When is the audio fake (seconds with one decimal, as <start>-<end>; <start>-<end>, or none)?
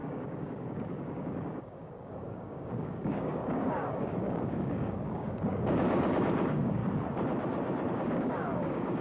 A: 0.0-6.8; 7.9-9.0